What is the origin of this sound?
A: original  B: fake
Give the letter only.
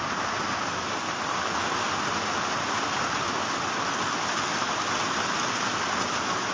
A